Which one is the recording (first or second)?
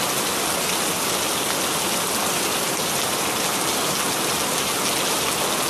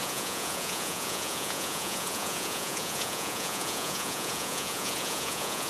first